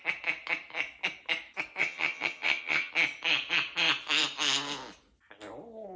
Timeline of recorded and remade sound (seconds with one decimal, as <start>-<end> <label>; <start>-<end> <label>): 0.0-1.8 recorded; 1.8-2.9 remade; 2.9-6.0 recorded